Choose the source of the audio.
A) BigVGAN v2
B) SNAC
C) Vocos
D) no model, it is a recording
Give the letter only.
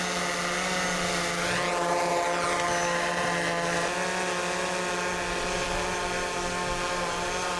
D